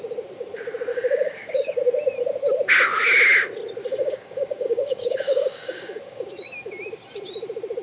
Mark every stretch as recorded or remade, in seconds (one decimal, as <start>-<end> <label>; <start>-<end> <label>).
0.0-0.9 recorded; 0.9-1.7 remade; 1.7-3.8 recorded; 3.8-6.3 remade; 6.3-7.8 recorded